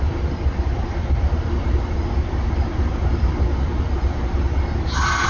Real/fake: real